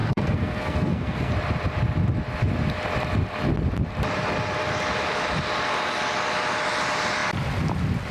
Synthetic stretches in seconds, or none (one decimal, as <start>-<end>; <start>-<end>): 0.0-1.3